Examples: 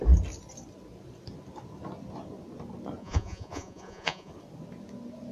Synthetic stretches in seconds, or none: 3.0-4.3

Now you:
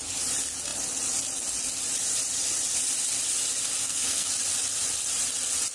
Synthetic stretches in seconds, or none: 3.8-4.3

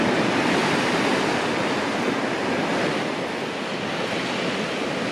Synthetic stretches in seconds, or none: none

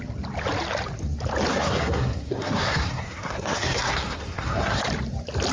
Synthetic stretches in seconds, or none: 1.5-4.8

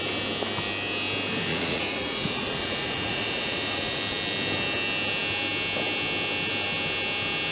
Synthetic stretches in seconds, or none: 1.5-4.0